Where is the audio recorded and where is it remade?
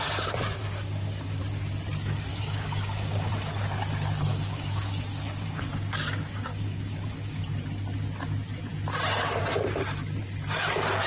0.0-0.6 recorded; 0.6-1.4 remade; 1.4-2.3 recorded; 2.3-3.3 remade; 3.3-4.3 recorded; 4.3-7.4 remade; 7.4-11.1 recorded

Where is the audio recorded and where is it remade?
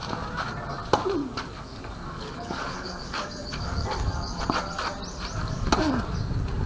0.0-1.2 recorded; 1.2-4.4 remade; 4.4-5.4 recorded; 5.4-5.9 remade; 5.9-6.7 recorded